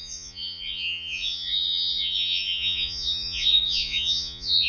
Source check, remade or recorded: remade